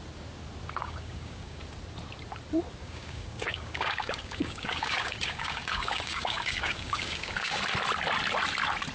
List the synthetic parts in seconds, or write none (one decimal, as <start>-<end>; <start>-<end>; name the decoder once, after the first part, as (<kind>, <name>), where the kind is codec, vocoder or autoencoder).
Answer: 0.8-1.6 (codec, DAC); 2.8-7.6